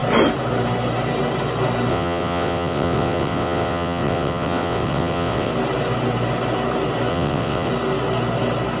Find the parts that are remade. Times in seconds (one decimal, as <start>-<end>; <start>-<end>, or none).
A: 1.9-5.5; 7.1-7.7